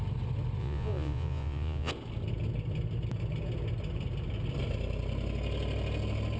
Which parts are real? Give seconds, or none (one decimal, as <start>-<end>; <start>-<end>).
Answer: 0.0-0.6; 1.9-6.4

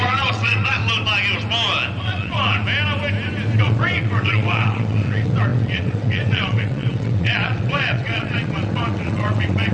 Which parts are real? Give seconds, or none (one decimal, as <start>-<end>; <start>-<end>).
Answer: 0.8-2.0; 2.6-3.6

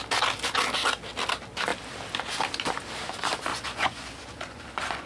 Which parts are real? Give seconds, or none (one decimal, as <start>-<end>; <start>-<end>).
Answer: 0.0-3.5